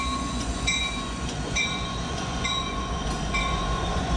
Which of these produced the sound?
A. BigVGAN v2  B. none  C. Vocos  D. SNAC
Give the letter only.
C